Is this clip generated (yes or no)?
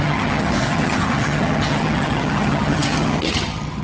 yes